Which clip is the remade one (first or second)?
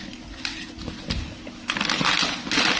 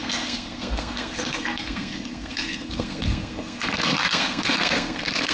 second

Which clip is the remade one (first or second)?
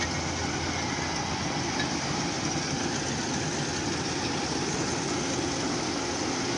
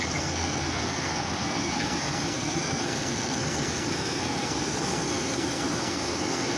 second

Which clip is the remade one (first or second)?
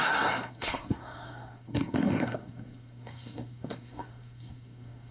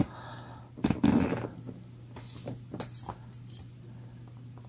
first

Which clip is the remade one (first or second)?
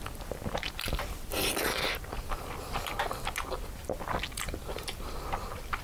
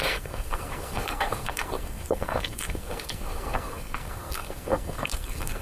second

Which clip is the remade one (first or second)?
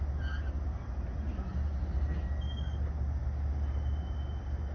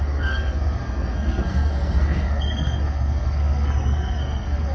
second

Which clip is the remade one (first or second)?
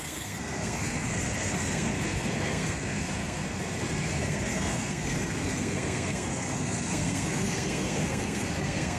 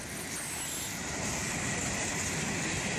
first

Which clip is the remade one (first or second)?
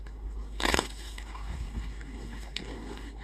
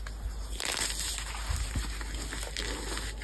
first